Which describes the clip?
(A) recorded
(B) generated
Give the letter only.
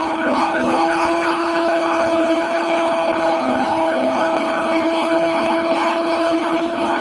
B